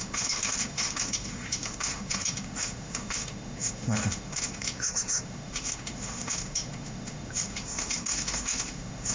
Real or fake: fake